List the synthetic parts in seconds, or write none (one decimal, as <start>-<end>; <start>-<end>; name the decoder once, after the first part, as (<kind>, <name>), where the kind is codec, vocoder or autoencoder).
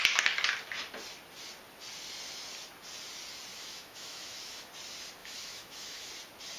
3.5-4.7 (autoencoder, DAC-VAE); 5.2-6.1